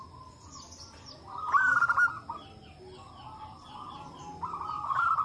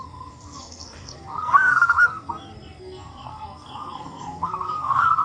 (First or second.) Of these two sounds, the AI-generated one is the second